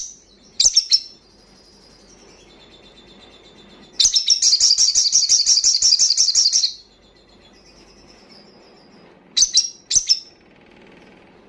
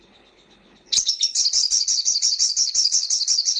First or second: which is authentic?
first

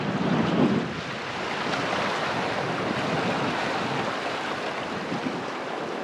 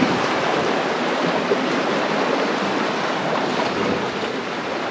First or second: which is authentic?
first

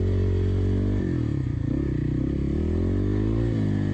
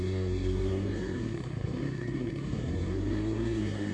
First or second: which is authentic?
first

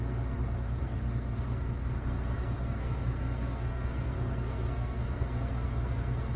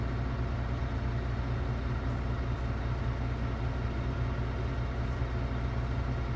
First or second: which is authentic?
second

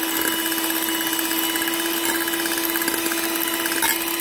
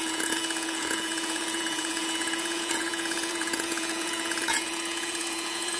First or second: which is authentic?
first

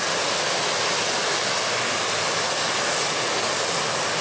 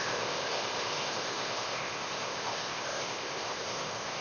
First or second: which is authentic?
first